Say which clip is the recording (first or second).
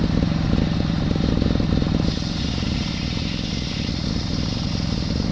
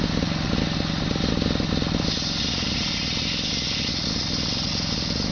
second